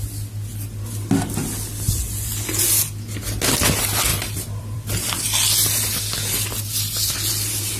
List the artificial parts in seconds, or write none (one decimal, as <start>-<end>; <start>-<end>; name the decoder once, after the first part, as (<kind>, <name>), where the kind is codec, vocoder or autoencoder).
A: 4.1-5.4 (vocoder, BigVGAN v2)

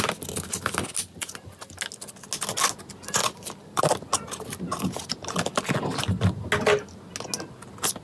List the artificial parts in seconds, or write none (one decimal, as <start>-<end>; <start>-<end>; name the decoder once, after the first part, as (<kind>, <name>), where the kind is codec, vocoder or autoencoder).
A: 3.2-3.8 (vocoder, BigVGAN v2)

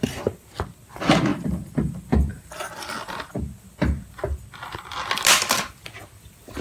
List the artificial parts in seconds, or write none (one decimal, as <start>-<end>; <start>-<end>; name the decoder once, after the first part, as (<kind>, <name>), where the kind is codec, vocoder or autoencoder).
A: 1.3-1.9 (vocoder, BigVGAN v2); 2.3-3.3

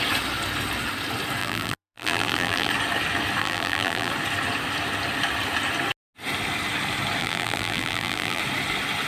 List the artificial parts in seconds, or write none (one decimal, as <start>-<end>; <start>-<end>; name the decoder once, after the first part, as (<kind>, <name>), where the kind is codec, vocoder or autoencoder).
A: 1.4-2.7 (vocoder, BigVGAN v2); 3.4-4.1; 7.2-8.4

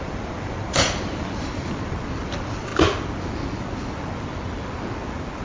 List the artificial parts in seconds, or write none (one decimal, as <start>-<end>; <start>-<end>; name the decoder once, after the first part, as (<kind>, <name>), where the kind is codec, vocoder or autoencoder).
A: 0.0-2.7 (vocoder, BigVGAN v2)

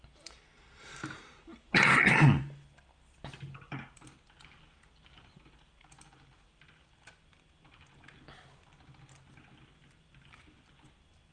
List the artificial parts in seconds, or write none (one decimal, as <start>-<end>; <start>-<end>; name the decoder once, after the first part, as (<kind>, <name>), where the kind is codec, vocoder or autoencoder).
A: none